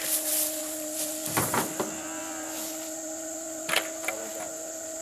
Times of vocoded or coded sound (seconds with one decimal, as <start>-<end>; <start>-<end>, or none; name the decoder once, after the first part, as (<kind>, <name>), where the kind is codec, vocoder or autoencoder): none